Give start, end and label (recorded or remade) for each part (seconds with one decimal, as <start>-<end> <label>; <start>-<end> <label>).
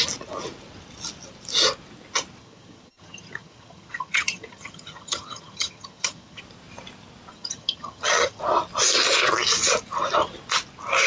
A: 0.0-2.4 recorded; 2.4-6.4 remade; 6.4-7.3 recorded; 7.3-8.4 remade; 8.4-11.1 recorded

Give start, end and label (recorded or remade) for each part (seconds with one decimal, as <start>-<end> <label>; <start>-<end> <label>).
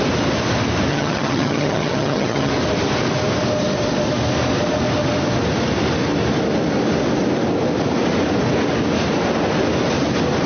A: 0.0-0.9 recorded; 0.9-2.5 remade; 2.5-10.5 recorded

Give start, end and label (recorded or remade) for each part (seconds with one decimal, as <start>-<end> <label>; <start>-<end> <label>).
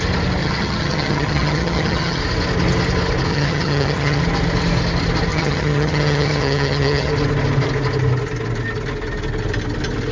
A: 0.0-0.4 recorded; 0.4-2.2 remade; 2.2-3.3 recorded; 3.3-4.2 remade; 4.2-5.3 recorded; 5.3-7.1 remade; 7.1-10.1 recorded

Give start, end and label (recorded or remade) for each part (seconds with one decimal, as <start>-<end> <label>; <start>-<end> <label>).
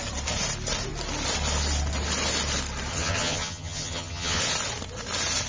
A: 0.0-2.9 recorded; 2.9-4.4 remade; 4.4-5.5 recorded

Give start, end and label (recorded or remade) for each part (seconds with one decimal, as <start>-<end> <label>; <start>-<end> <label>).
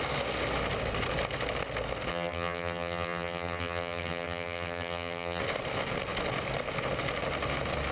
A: 0.0-2.1 recorded; 2.1-5.4 remade; 5.4-7.9 recorded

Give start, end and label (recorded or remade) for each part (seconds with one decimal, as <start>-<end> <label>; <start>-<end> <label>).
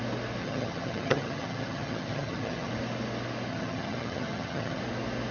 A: 0.0-0.4 recorded; 0.4-2.7 remade; 2.7-3.5 recorded; 3.5-4.8 remade; 4.8-5.3 recorded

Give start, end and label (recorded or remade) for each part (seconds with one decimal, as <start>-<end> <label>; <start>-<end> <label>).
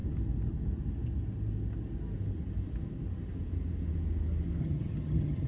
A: 0.0-4.6 recorded; 4.6-5.5 remade